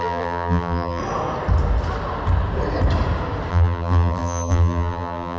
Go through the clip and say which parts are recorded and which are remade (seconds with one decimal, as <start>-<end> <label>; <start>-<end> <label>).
0.0-1.0 remade; 1.0-3.5 recorded; 3.5-5.4 remade